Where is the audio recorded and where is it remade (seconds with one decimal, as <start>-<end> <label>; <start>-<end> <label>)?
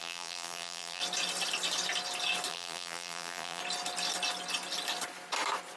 0.0-1.0 remade; 1.0-2.5 recorded; 2.5-3.6 remade; 3.6-5.8 recorded